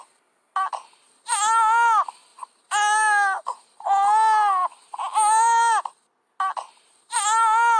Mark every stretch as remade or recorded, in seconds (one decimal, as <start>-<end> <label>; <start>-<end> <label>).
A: 0.0-7.8 recorded